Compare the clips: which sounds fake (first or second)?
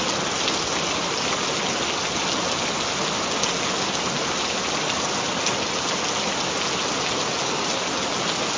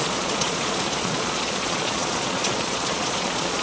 second